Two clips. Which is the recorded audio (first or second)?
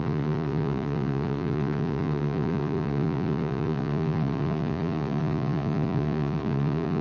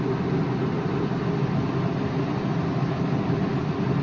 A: second